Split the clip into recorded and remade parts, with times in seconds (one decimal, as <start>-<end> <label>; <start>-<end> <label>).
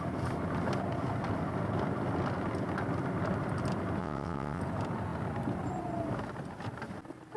0.0-4.0 recorded; 4.0-4.6 remade; 4.6-7.4 recorded